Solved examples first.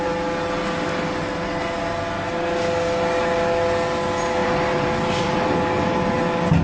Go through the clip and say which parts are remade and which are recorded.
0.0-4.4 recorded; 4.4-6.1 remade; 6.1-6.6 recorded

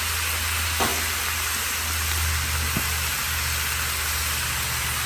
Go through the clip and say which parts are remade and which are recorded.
0.0-5.1 recorded

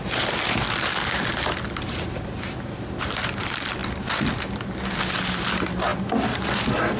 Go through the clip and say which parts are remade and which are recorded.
0.0-5.9 remade; 5.9-7.0 recorded

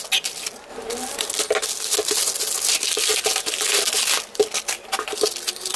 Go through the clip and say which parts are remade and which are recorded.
0.0-5.8 recorded

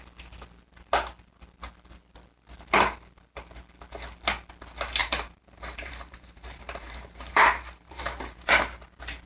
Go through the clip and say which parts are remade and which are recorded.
0.0-5.0 recorded; 5.0-8.5 remade; 8.5-9.3 recorded